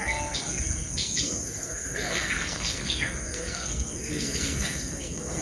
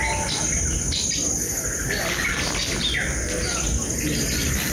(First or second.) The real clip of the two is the second